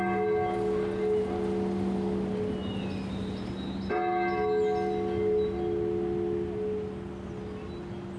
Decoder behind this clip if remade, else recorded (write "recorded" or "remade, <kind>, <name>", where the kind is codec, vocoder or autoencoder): recorded